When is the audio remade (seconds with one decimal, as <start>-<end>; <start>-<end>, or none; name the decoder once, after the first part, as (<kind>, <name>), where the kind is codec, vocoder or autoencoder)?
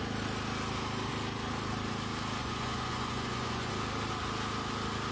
2.4-3.7 (vocoder, Vocos)